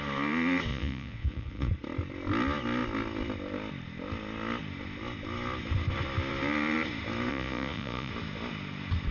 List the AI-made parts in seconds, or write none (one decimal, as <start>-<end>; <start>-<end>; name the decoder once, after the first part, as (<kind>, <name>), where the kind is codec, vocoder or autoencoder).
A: 0.7-1.7 (vocoder, Vocos); 7.3-8.1